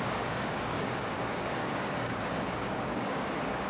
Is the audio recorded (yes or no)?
no